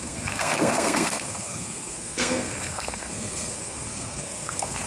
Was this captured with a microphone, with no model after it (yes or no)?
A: no